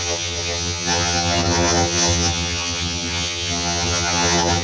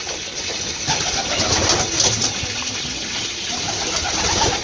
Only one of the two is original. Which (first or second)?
second